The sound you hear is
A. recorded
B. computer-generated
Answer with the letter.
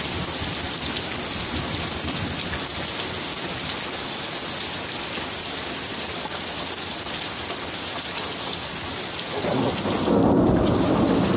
A